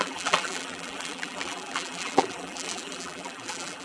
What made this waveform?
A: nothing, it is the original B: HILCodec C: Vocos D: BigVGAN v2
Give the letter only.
D